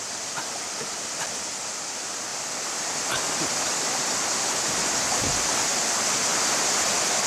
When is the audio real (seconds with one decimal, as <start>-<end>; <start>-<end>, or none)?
0.0-7.3